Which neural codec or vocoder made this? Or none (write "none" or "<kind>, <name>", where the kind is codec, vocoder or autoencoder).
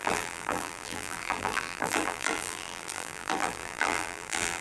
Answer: vocoder, BigVGAN v2